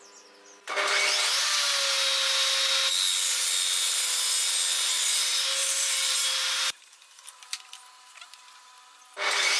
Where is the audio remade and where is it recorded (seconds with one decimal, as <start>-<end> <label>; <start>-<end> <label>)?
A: 0.0-5.6 recorded; 5.6-8.7 remade; 8.7-9.6 recorded